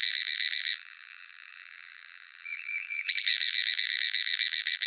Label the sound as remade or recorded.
remade